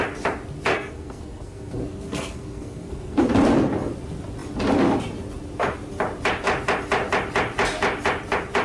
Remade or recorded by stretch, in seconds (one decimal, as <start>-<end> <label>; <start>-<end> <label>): 0.0-0.7 recorded; 0.7-3.2 remade; 3.2-8.6 recorded